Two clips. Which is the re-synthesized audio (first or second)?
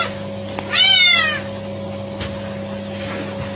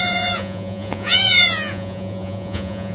second